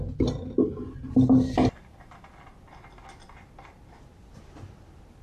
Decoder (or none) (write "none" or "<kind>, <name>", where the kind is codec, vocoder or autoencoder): none